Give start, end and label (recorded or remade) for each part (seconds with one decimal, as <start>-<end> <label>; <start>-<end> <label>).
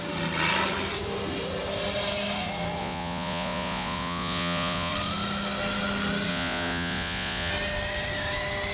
0.0-2.8 recorded; 2.8-4.9 remade; 4.9-6.3 recorded; 6.3-7.5 remade; 7.5-8.7 recorded